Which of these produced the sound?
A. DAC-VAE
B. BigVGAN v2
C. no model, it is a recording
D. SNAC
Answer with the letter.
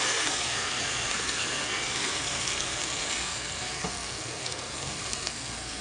D